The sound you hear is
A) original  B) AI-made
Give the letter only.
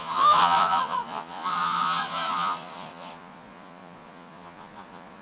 B